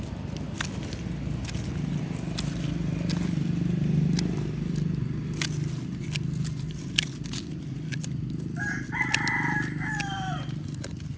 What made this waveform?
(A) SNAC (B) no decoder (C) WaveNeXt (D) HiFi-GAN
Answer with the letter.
B